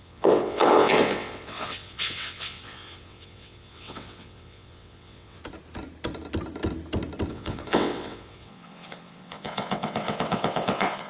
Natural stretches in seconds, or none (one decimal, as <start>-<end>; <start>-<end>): 5.4-7.3